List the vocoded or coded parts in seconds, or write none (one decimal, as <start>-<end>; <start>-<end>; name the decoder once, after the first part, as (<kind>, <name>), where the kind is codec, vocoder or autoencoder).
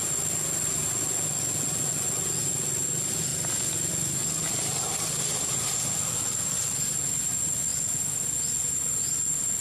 none